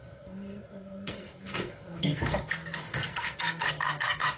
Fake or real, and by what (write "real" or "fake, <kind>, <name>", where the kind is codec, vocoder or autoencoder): fake, codec, SNAC